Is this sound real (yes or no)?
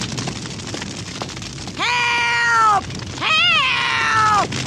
yes